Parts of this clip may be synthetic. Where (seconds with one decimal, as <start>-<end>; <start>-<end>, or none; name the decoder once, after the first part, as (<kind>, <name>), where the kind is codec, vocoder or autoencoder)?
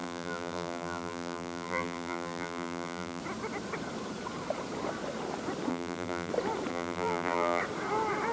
0.0-3.2 (vocoder, BigVGAN v2); 5.7-6.3; 6.7-7.6